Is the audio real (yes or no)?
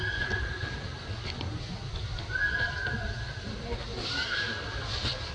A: yes